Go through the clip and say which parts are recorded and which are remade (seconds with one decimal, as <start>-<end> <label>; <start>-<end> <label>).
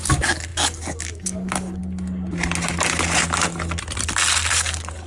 0.0-1.8 remade; 1.8-4.5 recorded; 4.5-5.1 remade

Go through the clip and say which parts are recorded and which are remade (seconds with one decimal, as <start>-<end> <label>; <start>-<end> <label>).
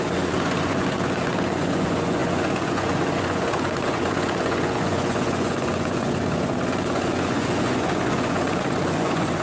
0.0-9.4 remade